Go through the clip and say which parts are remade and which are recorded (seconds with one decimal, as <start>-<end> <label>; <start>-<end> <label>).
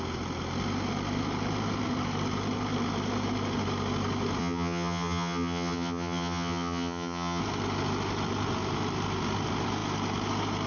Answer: 0.0-4.4 recorded; 4.4-7.4 remade; 7.4-10.7 recorded